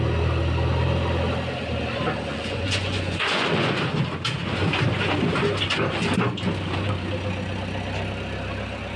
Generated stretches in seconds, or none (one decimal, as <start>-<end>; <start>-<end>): 2.3-3.8